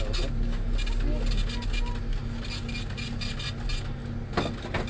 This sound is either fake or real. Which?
real